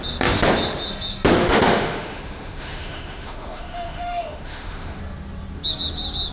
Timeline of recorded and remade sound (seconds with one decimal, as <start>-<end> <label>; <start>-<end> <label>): 0.0-1.4 recorded; 1.4-5.0 remade; 5.0-6.3 recorded